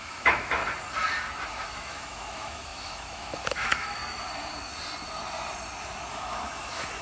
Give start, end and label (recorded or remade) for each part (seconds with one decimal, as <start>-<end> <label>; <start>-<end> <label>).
0.0-0.6 remade; 0.6-1.5 recorded; 1.5-4.0 remade; 4.0-6.1 recorded; 6.1-7.0 remade